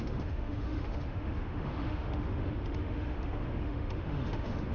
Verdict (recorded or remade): remade